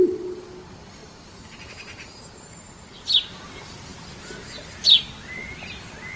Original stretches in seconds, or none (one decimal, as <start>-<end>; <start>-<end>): 0.0-6.2